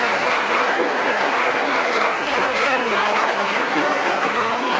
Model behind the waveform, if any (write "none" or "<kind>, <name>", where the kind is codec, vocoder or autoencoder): codec, SNAC